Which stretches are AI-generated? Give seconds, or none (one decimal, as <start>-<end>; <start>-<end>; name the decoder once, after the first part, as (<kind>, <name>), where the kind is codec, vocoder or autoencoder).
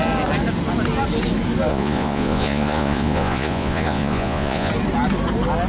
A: 1.7-4.7 (vocoder, Vocos)